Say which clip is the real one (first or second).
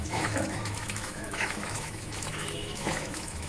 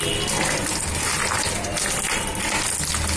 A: second